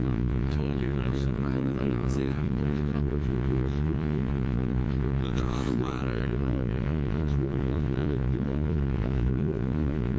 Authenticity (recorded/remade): remade